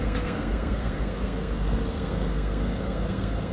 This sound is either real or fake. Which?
fake